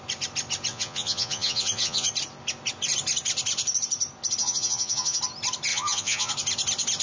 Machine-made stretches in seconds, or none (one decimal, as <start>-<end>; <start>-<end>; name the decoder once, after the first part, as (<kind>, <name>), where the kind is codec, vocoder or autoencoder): 0.7-2.1 (vocoder, Vocos); 4.4-5.2; 5.7-6.3